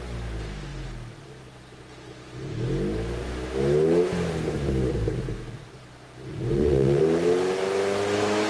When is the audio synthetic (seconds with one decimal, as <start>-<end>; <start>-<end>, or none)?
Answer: 6.3-7.0